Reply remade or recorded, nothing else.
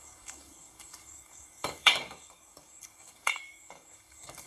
remade